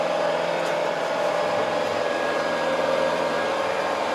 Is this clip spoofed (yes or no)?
yes